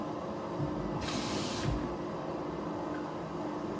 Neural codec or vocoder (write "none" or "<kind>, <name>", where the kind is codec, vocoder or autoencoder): none